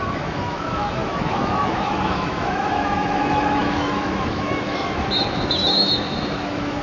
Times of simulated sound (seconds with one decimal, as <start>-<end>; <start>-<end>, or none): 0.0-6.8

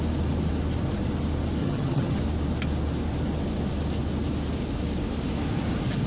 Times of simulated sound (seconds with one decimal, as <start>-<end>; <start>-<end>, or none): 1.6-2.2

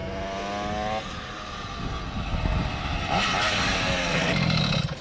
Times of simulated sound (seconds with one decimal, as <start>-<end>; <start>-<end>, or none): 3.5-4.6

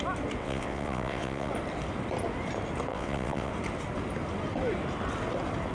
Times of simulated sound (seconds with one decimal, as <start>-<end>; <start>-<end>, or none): 0.4-1.5; 2.9-3.5

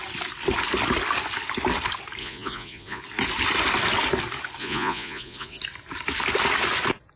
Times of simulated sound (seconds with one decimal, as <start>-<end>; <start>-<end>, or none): 2.2-3.0; 4.6-5.6

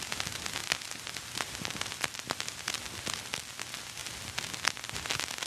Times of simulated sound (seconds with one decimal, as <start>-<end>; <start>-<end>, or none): none

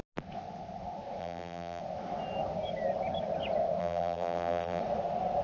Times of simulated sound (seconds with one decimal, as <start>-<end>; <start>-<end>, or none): 1.2-1.8; 3.8-4.8

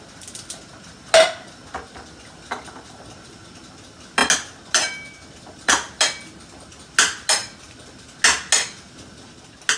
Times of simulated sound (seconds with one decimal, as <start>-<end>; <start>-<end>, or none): none